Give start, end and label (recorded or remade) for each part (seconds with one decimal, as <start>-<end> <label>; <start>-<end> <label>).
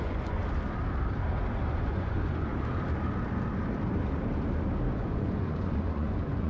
0.0-0.4 remade; 0.4-1.7 recorded; 1.7-2.5 remade; 2.5-4.9 recorded; 4.9-6.5 remade